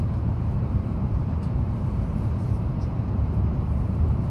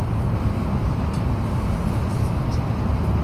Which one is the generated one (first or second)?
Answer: first